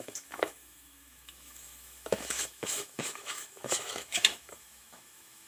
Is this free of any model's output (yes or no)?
no